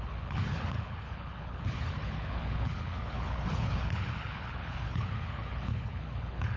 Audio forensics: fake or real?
fake